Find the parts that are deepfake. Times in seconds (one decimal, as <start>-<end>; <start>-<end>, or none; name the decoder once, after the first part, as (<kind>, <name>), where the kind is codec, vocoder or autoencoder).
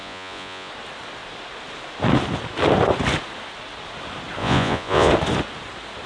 0.0-0.7 (vocoder, Vocos); 4.4-5.1